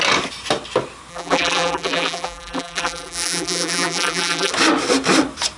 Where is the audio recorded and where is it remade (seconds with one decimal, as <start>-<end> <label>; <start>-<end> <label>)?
0.0-1.1 recorded; 1.1-4.5 remade; 4.5-5.6 recorded